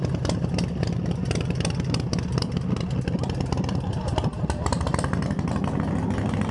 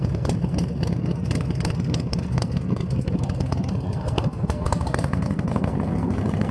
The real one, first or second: first